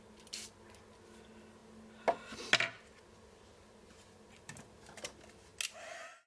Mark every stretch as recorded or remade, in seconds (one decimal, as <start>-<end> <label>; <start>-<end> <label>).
0.0-6.3 recorded